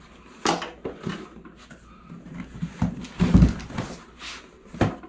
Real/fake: real